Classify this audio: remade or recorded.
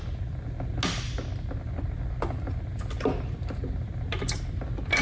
recorded